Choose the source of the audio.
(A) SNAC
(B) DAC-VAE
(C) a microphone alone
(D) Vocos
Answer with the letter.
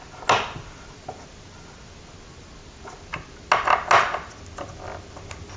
C